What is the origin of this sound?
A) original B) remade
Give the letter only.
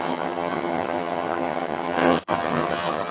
B